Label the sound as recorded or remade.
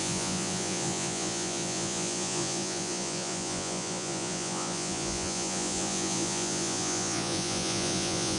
remade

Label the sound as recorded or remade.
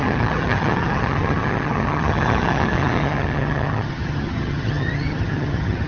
remade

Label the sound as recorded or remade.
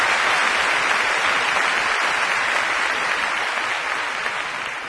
recorded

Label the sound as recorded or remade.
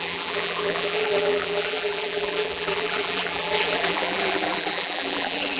remade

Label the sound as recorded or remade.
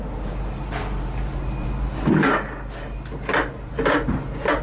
remade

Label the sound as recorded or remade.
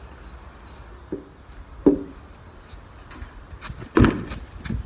recorded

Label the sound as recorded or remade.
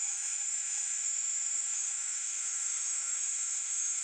remade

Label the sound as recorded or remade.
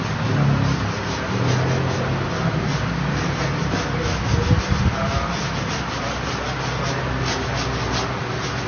recorded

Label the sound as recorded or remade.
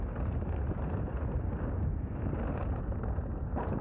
recorded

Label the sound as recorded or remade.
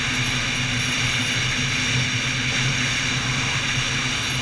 recorded